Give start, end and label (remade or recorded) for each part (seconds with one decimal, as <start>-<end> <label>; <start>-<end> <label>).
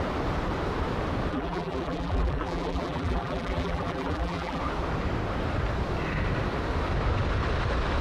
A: 0.0-1.3 recorded; 1.3-4.6 remade; 4.6-8.0 recorded